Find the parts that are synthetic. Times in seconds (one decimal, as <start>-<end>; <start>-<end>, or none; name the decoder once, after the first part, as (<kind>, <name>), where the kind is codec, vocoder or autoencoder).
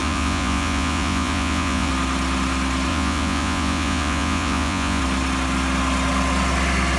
0.0-1.9 (vocoder, Vocos); 2.9-5.0